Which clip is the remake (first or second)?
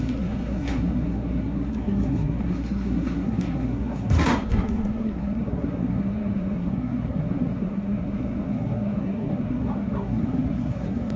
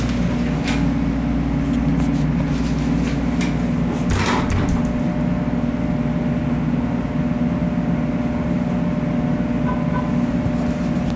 first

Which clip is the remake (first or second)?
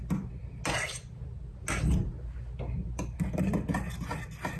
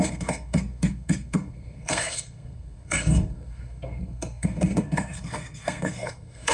second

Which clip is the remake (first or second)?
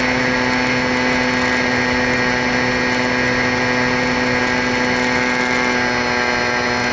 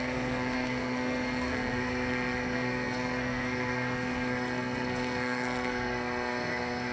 second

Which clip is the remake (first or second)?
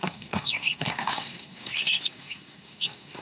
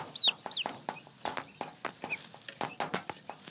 first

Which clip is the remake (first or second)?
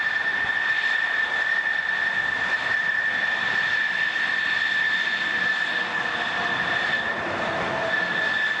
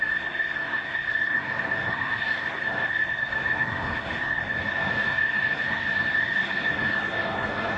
second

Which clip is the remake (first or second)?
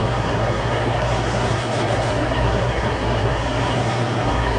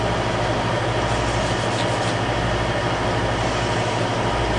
first